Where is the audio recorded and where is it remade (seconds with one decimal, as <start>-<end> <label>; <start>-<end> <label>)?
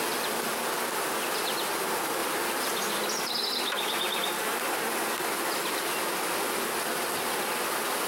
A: 0.0-8.1 recorded